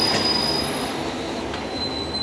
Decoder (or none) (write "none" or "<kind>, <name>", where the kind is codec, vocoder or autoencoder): none